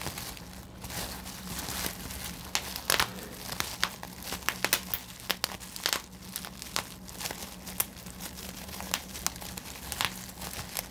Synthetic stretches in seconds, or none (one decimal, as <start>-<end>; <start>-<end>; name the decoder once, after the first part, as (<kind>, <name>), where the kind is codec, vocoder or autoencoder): 7.8-9.2 (vocoder, BigVGAN v2)